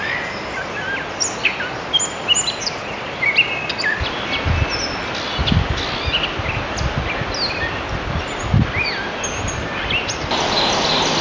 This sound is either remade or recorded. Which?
recorded